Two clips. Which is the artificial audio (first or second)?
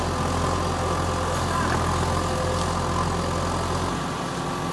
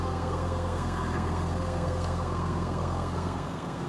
second